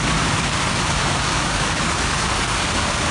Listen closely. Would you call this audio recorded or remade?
remade